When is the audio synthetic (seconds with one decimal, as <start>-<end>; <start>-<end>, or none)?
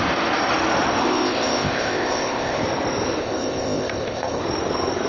1.0-2.6; 3.2-4.4